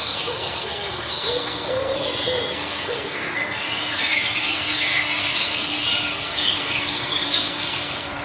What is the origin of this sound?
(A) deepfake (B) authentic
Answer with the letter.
A